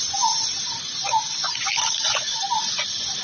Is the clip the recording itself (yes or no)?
yes